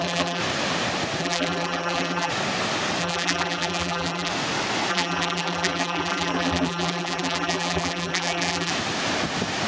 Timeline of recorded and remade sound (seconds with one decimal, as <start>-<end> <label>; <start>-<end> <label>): 0.0-0.4 remade; 0.4-1.2 recorded; 1.2-2.3 remade; 2.3-3.0 recorded; 3.0-4.3 remade; 4.3-4.9 recorded; 4.9-8.7 remade; 8.7-9.7 recorded